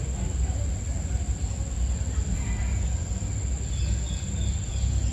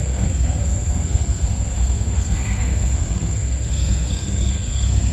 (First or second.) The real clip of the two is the first